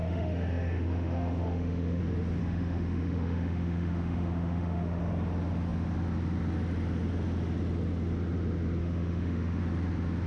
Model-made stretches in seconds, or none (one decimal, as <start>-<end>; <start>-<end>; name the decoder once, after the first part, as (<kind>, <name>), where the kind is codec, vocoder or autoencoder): 0.0-2.0 (autoencoder, DAC-VAE); 2.4-5.0; 8.8-9.6